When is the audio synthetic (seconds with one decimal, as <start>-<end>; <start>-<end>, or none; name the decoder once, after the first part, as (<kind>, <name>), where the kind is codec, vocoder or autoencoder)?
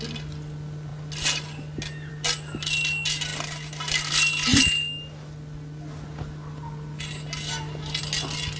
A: none